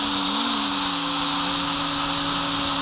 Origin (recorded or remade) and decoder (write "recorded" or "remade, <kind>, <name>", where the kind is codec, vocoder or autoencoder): recorded